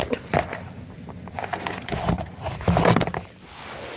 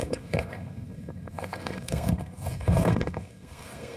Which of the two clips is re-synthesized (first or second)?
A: second